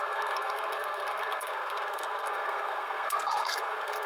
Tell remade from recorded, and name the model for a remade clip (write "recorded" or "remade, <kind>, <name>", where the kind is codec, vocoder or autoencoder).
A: remade, codec, SNAC